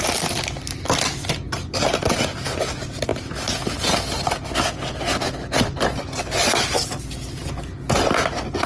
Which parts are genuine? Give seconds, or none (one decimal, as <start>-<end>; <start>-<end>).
0.0-8.7